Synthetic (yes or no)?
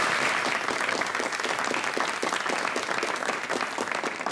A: no